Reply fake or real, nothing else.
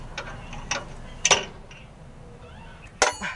real